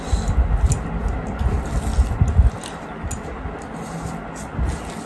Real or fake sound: real